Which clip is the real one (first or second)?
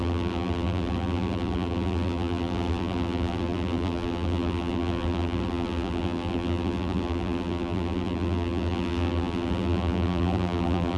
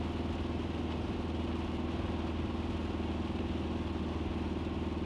second